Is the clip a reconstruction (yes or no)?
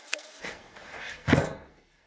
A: yes